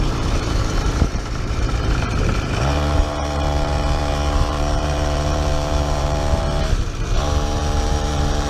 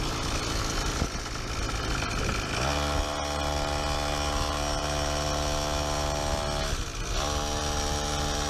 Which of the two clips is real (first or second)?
second